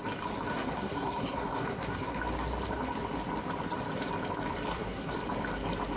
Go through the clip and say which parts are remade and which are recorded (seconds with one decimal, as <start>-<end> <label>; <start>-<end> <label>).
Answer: 0.0-0.5 recorded; 0.5-2.2 remade; 2.2-4.7 recorded; 4.7-5.2 remade; 5.2-6.0 recorded